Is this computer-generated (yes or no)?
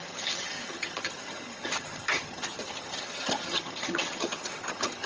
yes